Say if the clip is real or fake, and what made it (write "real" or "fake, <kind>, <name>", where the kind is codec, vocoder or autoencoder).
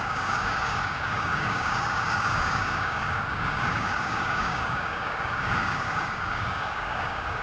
fake, codec, DAC